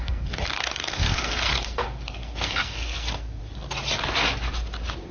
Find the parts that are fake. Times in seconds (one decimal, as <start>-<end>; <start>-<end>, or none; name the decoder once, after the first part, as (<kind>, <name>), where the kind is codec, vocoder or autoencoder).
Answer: 0.0-3.4 (codec, SNAC)